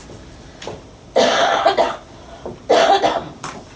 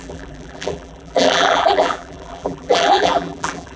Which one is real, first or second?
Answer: first